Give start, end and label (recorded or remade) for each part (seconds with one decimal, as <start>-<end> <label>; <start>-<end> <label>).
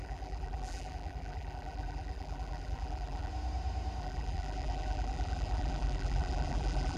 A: 0.0-3.3 remade; 3.3-4.0 recorded; 4.0-7.0 remade